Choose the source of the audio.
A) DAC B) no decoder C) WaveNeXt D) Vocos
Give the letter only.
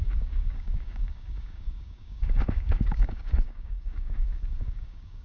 A